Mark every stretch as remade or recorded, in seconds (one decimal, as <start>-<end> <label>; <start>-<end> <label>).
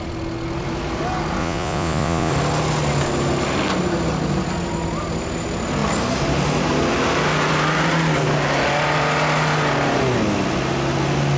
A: 0.0-1.4 recorded; 1.4-2.3 remade; 2.3-11.4 recorded